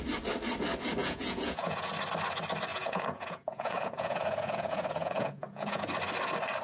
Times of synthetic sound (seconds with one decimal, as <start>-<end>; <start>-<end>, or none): 1.0-1.9; 2.7-5.8